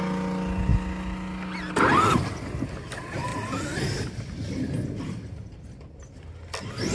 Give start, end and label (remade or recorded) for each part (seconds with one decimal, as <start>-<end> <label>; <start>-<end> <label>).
0.0-6.9 recorded